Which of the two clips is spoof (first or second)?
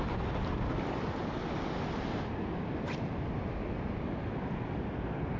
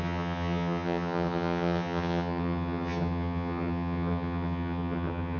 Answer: second